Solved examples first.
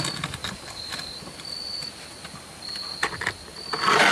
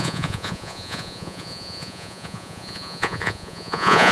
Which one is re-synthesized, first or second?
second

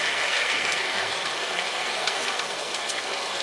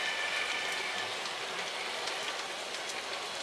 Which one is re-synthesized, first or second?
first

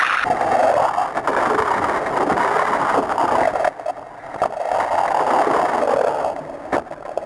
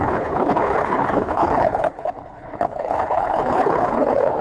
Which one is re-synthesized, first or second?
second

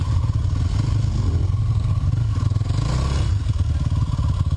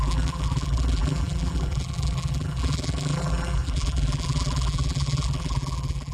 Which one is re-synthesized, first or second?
second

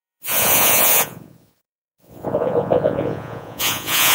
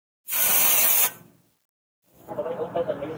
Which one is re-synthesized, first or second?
first